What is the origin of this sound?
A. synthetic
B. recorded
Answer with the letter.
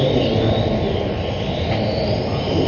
B